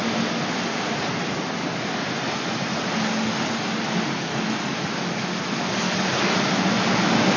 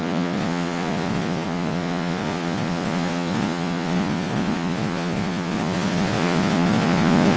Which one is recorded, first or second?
first